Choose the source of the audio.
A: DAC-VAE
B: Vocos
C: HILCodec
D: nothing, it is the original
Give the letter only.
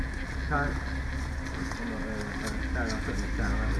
D